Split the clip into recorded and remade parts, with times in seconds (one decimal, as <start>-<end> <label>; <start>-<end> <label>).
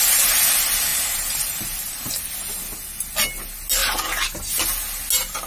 0.0-0.9 recorded; 0.9-2.1 remade; 2.1-5.5 recorded